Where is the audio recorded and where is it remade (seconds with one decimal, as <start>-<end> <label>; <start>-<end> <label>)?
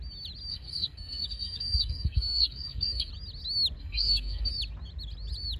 0.0-0.5 recorded; 0.5-3.1 remade; 3.1-3.8 recorded; 3.8-4.5 remade; 4.5-5.6 recorded